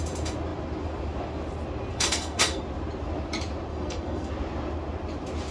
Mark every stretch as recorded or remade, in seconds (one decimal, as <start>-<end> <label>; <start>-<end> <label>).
0.0-1.9 recorded; 1.9-2.6 remade; 2.6-3.7 recorded; 3.7-4.3 remade; 4.3-5.5 recorded